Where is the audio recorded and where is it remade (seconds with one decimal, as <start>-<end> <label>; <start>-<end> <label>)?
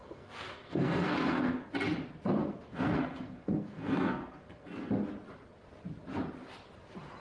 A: 0.0-1.7 remade; 1.7-2.4 recorded; 2.4-4.9 remade; 4.9-7.2 recorded